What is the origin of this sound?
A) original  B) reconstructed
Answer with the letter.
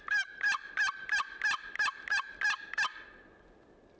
A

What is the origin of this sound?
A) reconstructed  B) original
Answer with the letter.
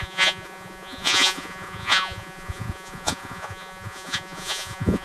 A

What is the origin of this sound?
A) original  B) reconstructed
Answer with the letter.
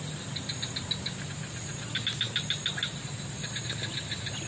A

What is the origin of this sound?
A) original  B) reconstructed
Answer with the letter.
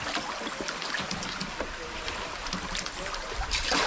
A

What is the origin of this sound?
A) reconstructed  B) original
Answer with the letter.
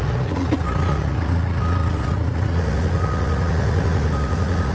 A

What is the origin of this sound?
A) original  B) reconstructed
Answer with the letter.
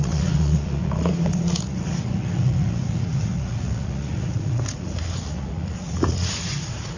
B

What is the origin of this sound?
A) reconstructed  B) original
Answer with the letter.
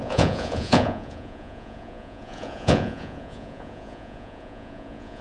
A